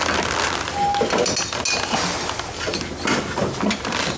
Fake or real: real